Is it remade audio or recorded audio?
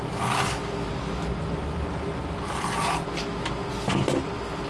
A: recorded